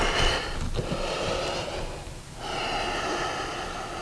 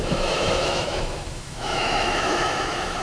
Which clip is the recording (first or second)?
first